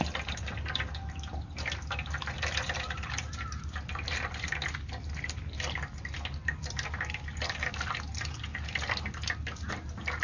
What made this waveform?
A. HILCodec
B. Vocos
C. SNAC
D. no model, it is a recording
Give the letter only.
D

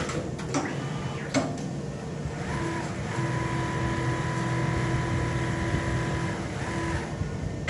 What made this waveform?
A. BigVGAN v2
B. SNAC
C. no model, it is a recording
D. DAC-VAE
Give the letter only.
C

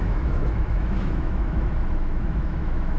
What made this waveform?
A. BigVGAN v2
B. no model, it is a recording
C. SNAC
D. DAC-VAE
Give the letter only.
D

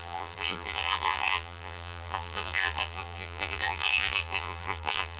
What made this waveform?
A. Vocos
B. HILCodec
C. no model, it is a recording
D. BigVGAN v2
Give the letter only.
D